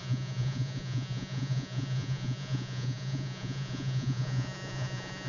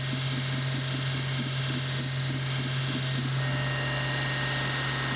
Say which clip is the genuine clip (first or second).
second